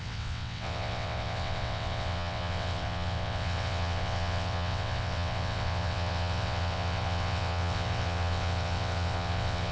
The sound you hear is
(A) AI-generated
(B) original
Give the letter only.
A